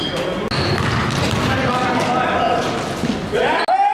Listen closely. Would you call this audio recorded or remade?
recorded